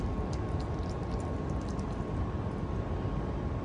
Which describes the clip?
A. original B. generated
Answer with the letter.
A